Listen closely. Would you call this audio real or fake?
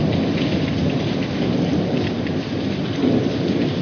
real